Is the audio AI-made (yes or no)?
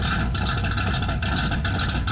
no